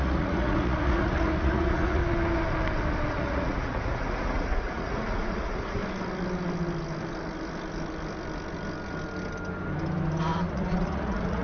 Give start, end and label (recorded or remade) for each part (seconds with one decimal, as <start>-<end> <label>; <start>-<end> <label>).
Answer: 0.0-2.0 remade; 2.0-3.1 recorded; 3.1-5.8 remade; 5.8-10.5 recorded; 10.5-11.4 remade